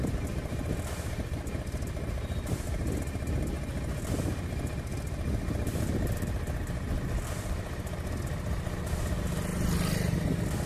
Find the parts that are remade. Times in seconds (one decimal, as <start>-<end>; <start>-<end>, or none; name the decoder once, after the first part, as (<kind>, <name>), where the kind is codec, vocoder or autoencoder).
none